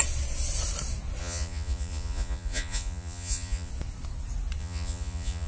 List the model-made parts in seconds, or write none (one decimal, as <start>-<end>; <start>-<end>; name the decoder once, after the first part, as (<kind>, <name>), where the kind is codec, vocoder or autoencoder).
1.2-3.7 (vocoder, Vocos); 4.6-5.5